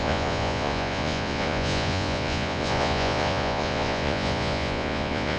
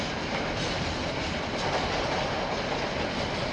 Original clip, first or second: second